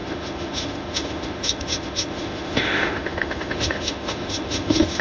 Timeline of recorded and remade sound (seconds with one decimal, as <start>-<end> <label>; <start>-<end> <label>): 0.0-5.0 remade